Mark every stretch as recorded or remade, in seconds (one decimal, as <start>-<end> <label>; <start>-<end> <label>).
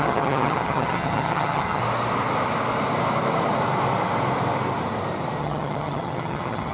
0.0-1.8 remade; 1.8-5.4 recorded; 5.4-6.7 remade